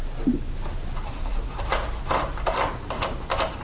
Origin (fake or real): real